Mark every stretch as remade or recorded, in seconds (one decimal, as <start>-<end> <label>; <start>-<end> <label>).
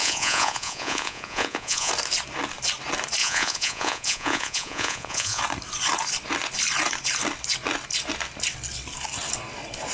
0.0-1.9 remade; 1.9-3.2 recorded; 3.2-5.4 remade; 5.4-9.9 recorded